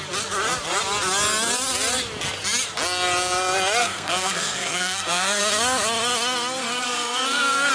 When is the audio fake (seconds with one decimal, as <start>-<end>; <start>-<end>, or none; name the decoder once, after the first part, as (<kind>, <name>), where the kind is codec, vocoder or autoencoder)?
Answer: 3.8-5.4 (codec, SNAC); 6.6-7.7